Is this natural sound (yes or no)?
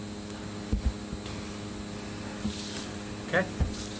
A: yes